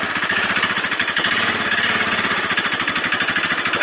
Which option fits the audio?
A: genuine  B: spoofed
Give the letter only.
B